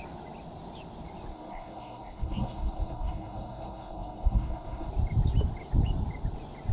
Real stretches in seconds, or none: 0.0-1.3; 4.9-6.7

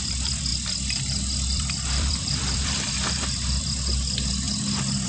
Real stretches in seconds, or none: 0.0-0.5; 3.6-5.1

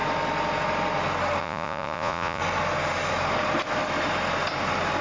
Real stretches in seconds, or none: 0.0-1.4; 2.4-5.0